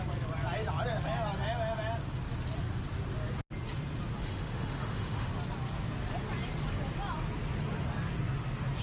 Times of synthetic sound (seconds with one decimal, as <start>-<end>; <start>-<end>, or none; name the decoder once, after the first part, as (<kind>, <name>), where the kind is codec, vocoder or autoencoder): 4.2-5.3 (autoencoder, DAC-VAE)